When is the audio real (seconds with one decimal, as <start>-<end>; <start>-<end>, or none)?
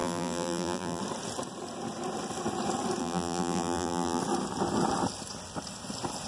1.0-3.0; 4.2-6.3